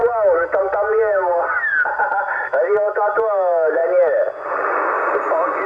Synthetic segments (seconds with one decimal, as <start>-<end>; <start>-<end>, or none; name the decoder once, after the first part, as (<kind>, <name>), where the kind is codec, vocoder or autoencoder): none